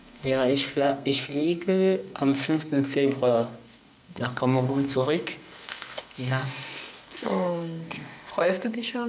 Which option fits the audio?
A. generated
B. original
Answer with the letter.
A